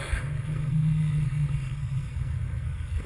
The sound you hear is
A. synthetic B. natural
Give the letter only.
A